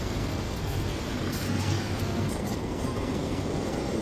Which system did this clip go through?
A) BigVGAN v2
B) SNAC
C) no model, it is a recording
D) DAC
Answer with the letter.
B